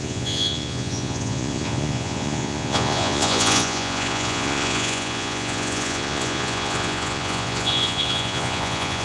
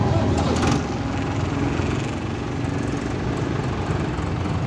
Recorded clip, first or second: second